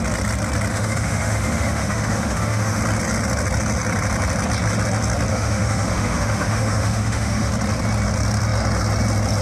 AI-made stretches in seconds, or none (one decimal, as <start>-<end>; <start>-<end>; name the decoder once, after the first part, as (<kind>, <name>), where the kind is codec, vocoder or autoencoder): 0.7-2.8 (autoencoder, DAC-VAE); 5.3-7.5